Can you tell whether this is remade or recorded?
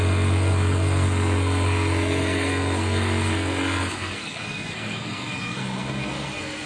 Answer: remade